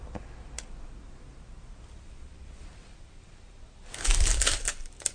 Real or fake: real